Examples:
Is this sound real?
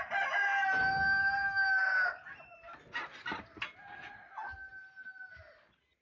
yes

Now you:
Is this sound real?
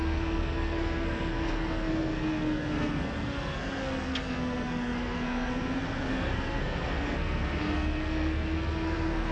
no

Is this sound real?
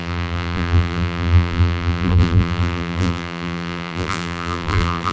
no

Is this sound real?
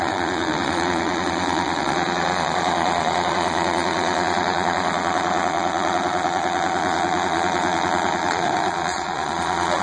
no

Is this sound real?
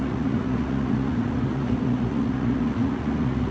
no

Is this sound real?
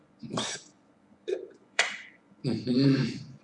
no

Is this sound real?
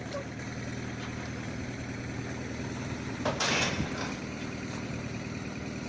yes